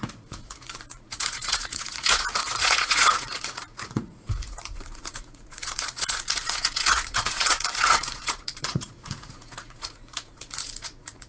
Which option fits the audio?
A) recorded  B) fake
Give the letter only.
B